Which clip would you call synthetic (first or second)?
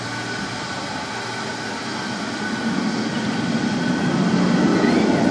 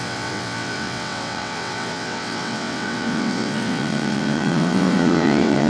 second